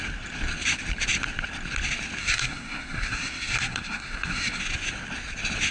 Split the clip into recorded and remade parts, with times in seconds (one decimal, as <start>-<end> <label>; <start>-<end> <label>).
0.0-2.2 recorded; 2.2-4.6 remade; 4.6-5.7 recorded